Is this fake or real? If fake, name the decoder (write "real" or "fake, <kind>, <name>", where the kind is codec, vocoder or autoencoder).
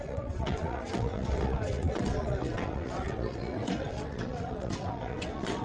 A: fake, vocoder, WaveNeXt